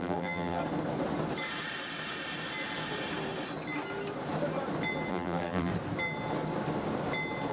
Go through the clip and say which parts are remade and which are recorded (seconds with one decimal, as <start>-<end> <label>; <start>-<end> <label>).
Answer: 0.0-0.6 remade; 0.6-5.1 recorded; 5.1-5.7 remade; 5.7-7.5 recorded